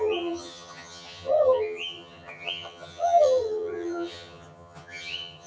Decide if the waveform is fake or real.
fake